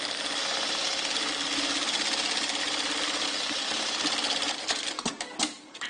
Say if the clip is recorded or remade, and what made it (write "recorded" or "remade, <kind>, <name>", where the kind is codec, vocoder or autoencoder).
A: recorded